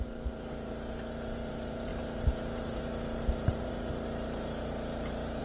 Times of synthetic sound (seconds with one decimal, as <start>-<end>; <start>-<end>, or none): 0.0-5.4